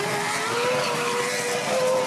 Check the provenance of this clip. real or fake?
real